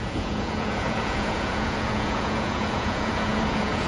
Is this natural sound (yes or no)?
no